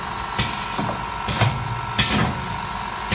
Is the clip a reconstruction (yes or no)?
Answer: no